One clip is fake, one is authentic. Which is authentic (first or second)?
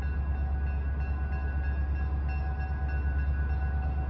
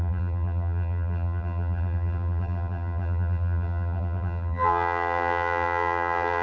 first